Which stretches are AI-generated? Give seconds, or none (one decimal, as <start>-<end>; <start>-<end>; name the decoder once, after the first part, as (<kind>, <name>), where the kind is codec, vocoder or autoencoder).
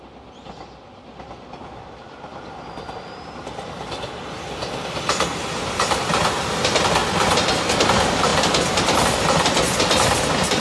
none